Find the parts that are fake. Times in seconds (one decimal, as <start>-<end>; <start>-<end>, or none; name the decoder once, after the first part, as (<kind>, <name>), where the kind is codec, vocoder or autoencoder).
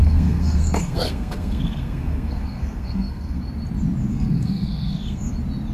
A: 0.0-3.4 (codec, SNAC); 4.1-5.3